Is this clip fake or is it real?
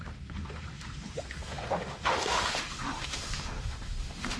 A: fake